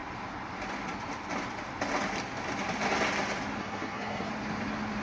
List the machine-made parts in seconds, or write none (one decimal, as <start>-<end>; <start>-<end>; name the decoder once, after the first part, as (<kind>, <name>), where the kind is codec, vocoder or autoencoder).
3.6-4.3 (codec, SNAC)